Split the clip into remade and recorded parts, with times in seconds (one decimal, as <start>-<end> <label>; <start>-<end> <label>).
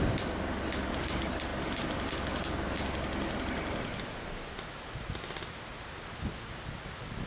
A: 0.0-7.3 recorded